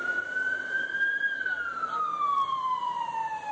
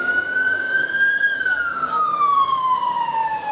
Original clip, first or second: first